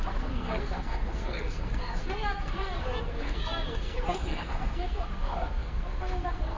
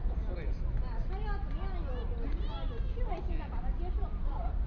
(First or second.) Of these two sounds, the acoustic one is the second